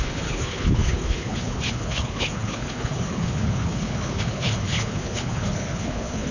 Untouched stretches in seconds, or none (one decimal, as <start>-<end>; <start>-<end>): none

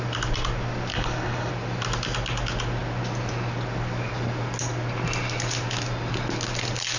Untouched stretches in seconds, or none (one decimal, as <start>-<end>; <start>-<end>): 0.0-0.9; 1.5-7.0

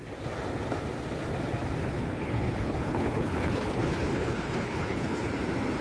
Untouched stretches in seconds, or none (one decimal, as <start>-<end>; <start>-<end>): 0.0-1.8; 5.3-5.8

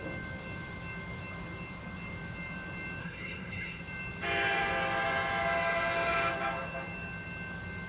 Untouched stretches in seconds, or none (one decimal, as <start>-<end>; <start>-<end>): 0.0-3.0; 3.8-7.9

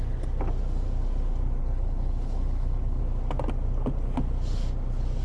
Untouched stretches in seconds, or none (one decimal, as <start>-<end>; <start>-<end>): 0.0-1.6; 3.0-5.2

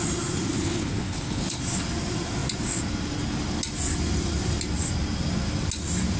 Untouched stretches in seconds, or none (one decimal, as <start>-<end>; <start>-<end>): 0.0-0.5; 1.6-6.2

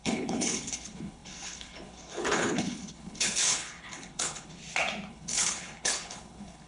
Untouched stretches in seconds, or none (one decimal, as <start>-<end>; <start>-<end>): 4.6-5.1